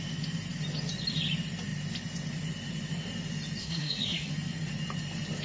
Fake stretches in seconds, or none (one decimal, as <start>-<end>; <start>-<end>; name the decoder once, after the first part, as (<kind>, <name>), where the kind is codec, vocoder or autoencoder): 3.6-4.3 (codec, SNAC)